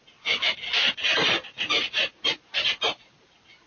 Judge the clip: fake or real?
real